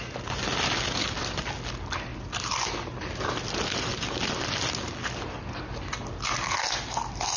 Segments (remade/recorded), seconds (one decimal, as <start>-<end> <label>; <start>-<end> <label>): 0.0-2.1 recorded; 2.1-3.5 remade; 3.5-7.4 recorded